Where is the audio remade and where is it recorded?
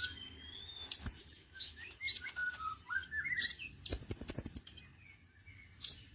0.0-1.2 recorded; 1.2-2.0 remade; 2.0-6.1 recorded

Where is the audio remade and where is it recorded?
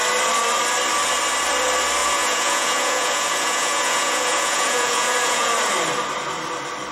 0.0-2.0 recorded; 2.0-5.5 remade; 5.5-6.9 recorded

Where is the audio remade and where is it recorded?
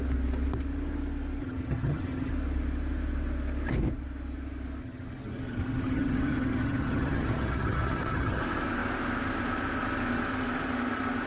0.0-1.4 recorded; 1.4-2.3 remade; 2.3-4.8 recorded; 4.8-8.4 remade; 8.4-11.3 recorded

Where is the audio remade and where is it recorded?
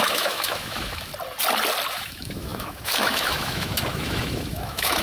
0.0-1.1 remade; 1.1-1.9 recorded; 1.9-5.0 remade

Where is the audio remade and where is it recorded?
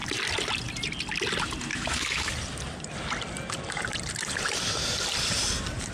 0.0-1.7 recorded; 1.7-2.3 remade; 2.3-5.9 recorded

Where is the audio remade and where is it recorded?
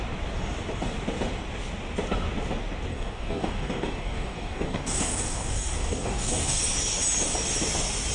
0.0-2.9 recorded; 2.9-6.6 remade; 6.6-8.1 recorded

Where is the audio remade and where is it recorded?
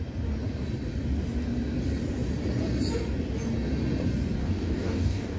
0.0-4.4 recorded; 4.4-5.4 remade